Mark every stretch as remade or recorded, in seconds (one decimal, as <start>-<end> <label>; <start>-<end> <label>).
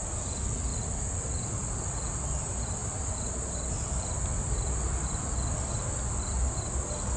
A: 0.0-7.2 recorded